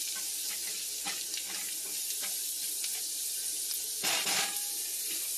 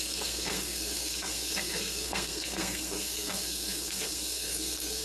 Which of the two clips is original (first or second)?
first